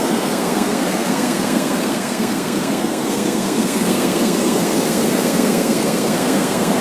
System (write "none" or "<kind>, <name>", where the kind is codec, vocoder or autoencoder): codec, SNAC